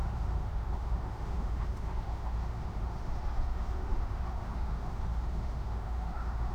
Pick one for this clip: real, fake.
fake